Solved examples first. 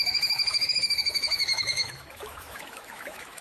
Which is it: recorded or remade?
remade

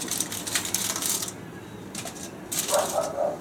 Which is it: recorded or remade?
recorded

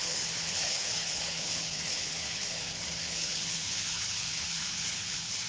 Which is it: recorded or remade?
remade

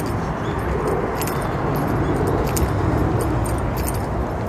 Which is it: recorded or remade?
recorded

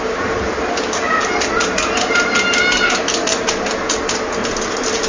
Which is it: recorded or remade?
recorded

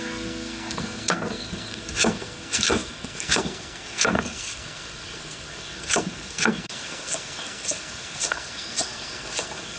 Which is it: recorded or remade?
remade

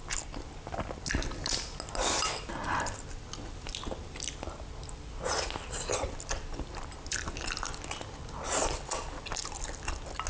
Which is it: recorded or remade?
recorded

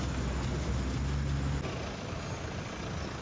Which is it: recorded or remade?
recorded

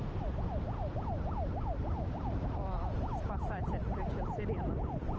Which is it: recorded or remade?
remade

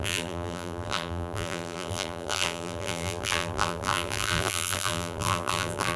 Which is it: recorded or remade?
remade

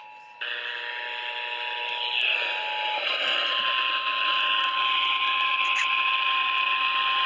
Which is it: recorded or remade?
recorded